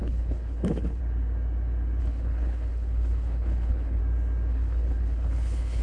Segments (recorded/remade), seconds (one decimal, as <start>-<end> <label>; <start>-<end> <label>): 0.0-1.0 remade; 1.0-2.0 recorded; 2.0-4.0 remade; 4.0-4.5 recorded; 4.5-5.8 remade